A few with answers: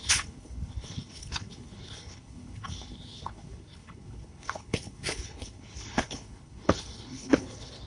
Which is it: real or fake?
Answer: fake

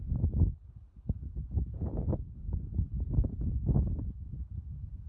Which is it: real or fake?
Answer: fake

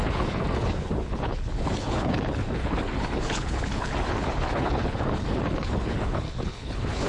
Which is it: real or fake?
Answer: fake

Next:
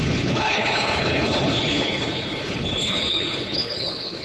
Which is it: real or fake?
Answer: fake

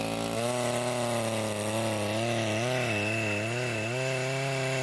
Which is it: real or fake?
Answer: real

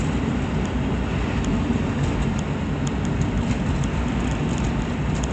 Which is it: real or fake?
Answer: real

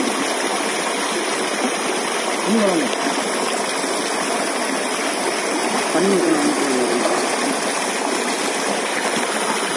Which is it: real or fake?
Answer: real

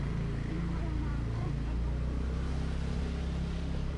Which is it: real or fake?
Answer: real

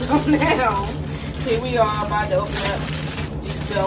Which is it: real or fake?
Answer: real